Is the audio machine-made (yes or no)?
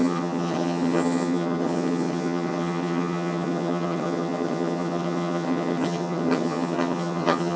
yes